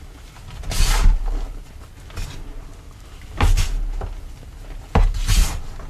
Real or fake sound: real